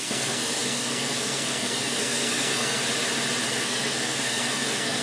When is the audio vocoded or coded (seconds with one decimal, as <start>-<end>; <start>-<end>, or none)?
0.0-2.8; 3.5-5.0